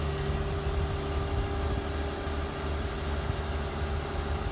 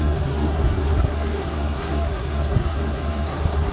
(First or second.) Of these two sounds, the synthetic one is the second